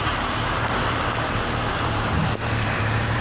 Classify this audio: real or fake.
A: fake